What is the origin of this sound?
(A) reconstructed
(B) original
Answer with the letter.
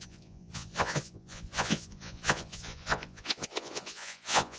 A